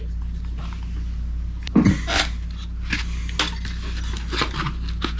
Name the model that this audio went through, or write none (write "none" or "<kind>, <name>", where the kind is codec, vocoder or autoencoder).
none